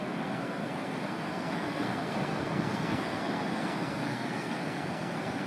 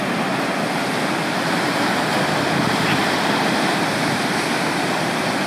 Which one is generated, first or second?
first